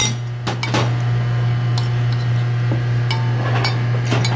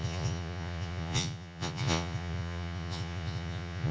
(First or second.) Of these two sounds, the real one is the first